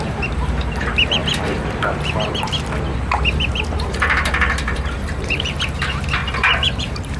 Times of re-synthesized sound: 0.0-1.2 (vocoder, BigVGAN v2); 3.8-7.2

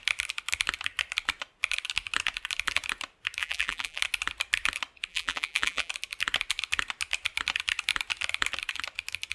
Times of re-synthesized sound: 3.4-4.0 (vocoder, BigVGAN v2); 5.1-5.9

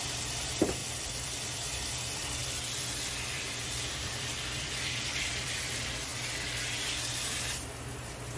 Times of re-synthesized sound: 0.0-6.1 (vocoder, BigVGAN v2)

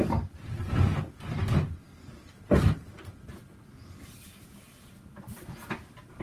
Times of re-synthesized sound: 1.4-3.0 (vocoder, BigVGAN v2); 3.8-6.2

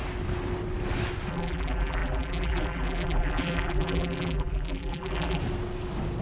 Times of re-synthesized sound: 1.3-5.4 (vocoder, BigVGAN v2)

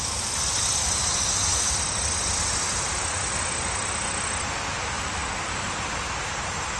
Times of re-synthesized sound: none